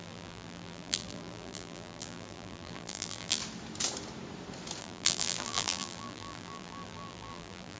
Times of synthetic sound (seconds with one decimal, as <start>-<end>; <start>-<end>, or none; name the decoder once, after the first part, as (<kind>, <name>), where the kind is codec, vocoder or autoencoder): 0.0-3.4 (vocoder, BigVGAN v2); 4.8-7.8